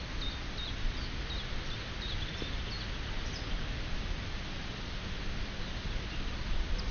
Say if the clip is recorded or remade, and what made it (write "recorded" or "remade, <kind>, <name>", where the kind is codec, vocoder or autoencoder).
recorded